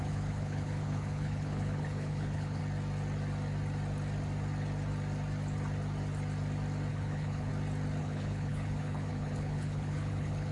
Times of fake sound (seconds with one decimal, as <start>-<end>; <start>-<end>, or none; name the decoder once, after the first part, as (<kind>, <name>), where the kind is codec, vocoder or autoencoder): 0.0-2.6 (codec, HILCodec); 6.9-7.5; 8.0-10.5